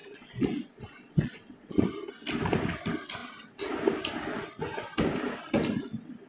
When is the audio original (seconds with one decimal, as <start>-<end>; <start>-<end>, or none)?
1.8-6.3